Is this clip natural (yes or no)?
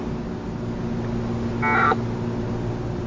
yes